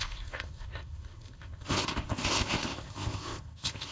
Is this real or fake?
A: fake